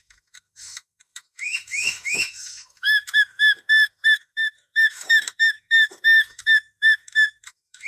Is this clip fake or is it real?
fake